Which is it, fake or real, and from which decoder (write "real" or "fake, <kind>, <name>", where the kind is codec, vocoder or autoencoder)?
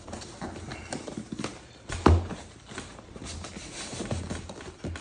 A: real